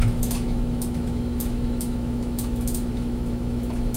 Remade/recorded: remade